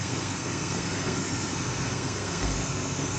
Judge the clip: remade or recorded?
remade